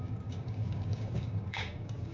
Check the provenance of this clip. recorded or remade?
remade